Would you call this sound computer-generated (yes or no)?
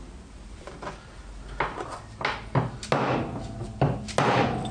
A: no